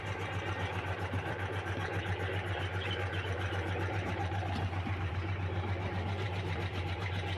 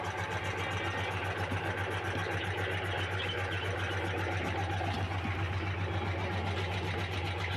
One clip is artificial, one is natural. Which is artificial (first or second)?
first